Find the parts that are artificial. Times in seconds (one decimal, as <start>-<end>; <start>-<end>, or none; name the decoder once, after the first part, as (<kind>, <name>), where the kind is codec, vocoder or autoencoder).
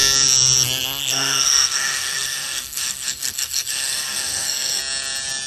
1.0-4.8 (codec, SNAC)